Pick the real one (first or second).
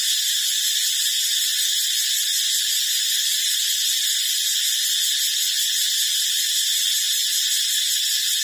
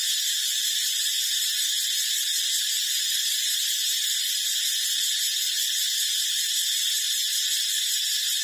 first